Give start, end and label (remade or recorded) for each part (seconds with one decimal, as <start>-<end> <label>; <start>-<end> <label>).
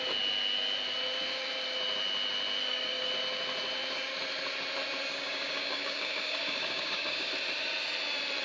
0.0-2.6 recorded; 2.6-3.1 remade; 3.1-5.1 recorded; 5.1-7.3 remade; 7.3-8.4 recorded